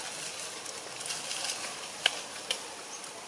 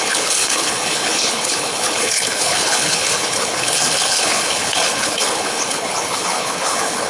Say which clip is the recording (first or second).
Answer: first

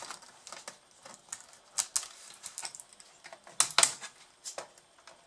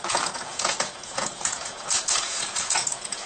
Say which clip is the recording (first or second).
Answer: first